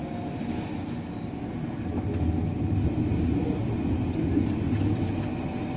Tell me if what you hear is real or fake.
real